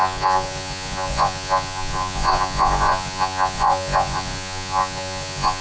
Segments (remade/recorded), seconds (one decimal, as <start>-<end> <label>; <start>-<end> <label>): 0.0-5.6 remade